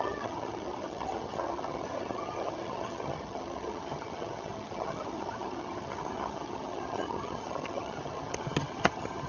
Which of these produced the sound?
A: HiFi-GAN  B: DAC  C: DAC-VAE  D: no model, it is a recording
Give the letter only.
A